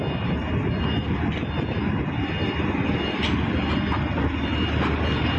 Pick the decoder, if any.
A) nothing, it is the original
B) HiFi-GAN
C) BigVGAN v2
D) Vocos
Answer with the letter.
A